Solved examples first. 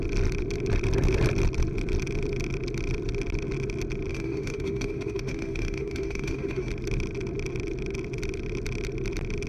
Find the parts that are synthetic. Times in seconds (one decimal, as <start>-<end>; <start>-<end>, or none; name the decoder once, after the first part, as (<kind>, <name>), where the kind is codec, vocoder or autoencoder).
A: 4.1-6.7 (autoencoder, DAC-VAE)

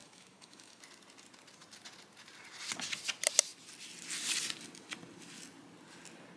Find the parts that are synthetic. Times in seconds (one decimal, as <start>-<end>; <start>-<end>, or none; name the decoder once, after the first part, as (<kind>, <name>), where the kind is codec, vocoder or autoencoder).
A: 0.0-0.8 (autoencoder, DAC-VAE)

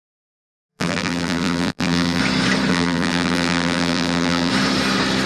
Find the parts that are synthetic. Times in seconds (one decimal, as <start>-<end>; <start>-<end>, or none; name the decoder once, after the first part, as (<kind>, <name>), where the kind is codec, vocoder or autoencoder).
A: 0.7-2.2 (vocoder, BigVGAN v2); 2.7-4.5

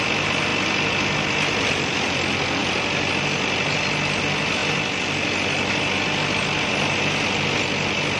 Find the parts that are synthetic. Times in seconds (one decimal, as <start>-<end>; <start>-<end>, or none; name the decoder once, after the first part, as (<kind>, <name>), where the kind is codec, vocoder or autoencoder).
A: none

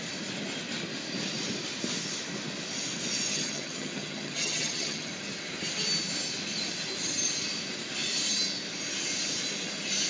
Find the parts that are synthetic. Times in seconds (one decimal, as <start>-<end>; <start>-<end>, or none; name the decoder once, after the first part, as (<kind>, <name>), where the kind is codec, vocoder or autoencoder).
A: 3.3-5.1 (vocoder, HiFi-GAN)

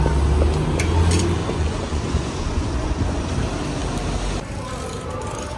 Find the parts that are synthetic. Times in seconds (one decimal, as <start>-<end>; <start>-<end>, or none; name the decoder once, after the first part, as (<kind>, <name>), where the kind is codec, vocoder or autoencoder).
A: 1.4-3.3 (vocoder, Vocos)

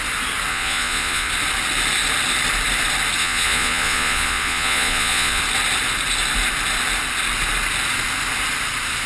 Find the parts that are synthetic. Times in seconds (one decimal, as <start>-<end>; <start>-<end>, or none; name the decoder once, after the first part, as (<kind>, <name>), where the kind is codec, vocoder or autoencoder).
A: 0.5-1.3 (vocoder, Vocos); 3.2-5.4

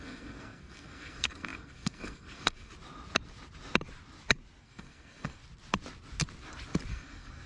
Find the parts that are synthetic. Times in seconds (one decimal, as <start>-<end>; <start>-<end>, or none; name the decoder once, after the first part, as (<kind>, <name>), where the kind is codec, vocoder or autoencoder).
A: 0.0-2.7 (codec, SNAC); 4.6-5.4; 6.9-7.5